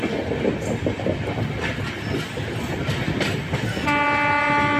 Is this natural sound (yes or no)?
yes